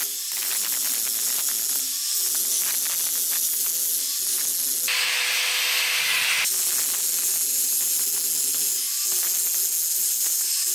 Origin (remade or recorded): recorded